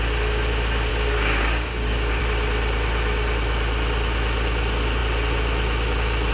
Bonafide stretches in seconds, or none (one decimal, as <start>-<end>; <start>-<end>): 0.0-0.9; 2.2-6.3